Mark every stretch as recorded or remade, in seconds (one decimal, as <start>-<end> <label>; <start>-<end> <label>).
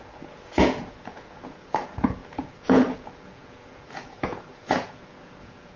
0.0-5.8 remade